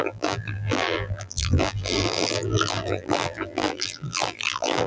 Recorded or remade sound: remade